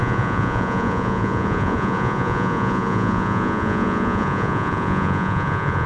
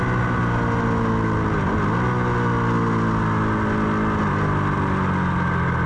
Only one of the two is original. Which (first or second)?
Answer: second